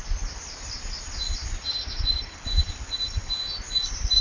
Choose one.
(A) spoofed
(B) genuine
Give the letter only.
A